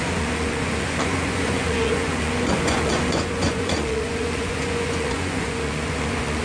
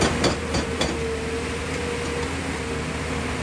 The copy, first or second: first